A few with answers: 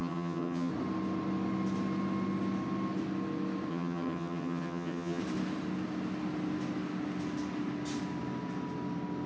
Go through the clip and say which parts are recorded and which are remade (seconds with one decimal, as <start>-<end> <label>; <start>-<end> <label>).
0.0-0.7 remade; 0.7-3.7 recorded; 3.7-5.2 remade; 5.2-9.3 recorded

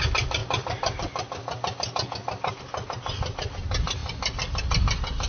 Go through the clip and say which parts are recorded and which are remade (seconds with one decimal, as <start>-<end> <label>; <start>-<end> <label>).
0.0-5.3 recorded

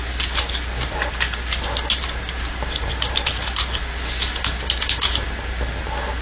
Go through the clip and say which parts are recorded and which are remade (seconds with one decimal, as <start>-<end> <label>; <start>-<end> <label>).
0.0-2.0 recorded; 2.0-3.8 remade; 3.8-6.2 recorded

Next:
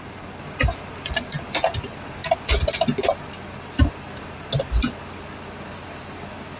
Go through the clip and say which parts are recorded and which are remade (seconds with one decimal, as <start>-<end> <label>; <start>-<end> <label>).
0.0-6.6 recorded